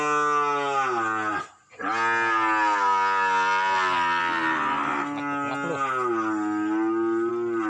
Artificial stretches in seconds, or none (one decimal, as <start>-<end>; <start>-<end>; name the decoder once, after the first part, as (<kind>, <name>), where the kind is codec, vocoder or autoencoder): none